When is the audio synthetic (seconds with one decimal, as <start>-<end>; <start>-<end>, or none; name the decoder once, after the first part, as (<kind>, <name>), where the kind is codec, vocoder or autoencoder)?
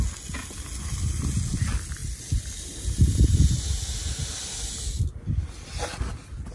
none